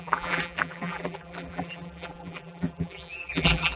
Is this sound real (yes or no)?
no